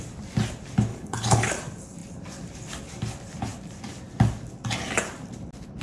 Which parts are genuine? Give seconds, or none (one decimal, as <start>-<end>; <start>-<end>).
0.0-0.9; 1.5-5.8